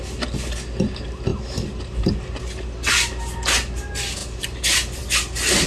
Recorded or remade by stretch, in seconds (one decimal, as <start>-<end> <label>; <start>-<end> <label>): 0.0-5.7 recorded